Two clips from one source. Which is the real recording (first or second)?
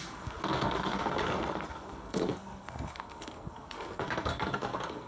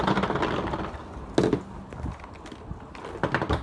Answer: second